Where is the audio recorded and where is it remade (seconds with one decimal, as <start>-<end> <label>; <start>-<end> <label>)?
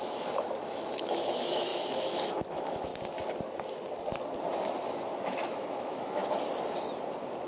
0.0-2.9 remade; 2.9-5.1 recorded; 5.1-6.2 remade; 6.2-7.5 recorded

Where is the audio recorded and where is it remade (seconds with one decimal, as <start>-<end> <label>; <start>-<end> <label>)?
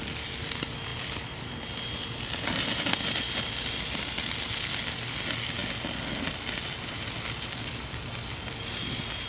0.0-9.3 recorded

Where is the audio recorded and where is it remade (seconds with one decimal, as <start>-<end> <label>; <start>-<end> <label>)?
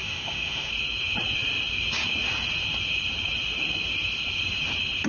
0.0-0.7 remade; 0.7-5.1 recorded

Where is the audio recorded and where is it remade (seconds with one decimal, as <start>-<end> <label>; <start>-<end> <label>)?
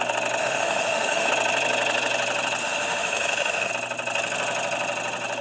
0.0-0.4 recorded; 0.4-1.3 remade; 1.3-2.6 recorded; 2.6-3.7 remade; 3.7-5.4 recorded